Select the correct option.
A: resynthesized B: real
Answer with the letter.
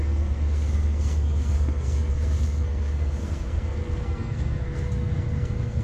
A